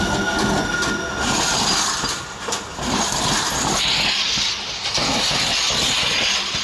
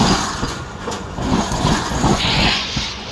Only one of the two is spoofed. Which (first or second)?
second